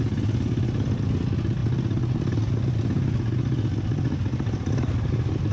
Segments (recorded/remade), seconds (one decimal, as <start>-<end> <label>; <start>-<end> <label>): 0.0-5.5 recorded